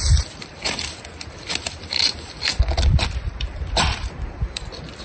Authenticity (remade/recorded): remade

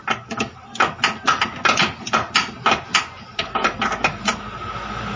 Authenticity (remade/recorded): recorded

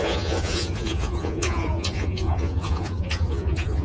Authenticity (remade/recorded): remade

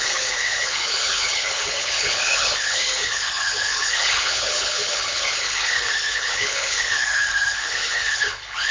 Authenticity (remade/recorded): remade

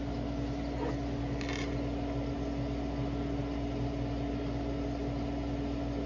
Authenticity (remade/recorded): recorded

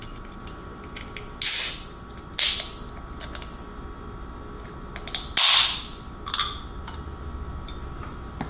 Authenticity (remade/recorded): recorded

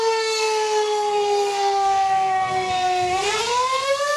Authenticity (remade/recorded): remade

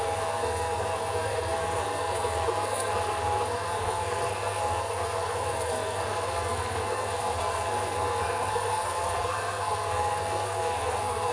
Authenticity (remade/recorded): remade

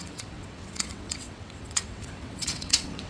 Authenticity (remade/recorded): remade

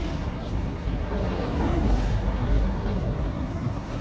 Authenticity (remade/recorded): remade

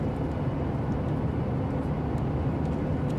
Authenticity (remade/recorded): recorded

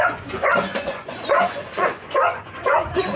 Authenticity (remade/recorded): remade